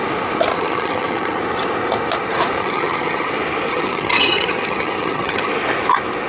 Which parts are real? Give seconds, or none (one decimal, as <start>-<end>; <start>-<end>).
0.0-0.5; 1.4-2.6; 3.3-3.7; 5.5-6.3